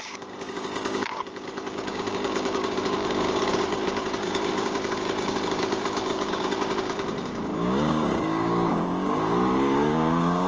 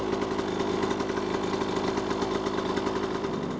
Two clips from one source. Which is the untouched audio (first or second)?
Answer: second